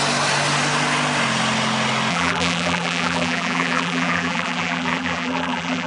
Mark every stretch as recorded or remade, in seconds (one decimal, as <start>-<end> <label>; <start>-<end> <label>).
0.0-2.1 recorded; 2.1-5.9 remade